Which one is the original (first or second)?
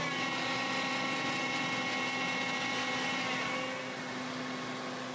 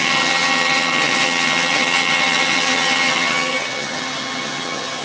first